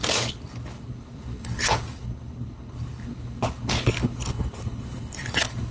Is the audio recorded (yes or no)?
no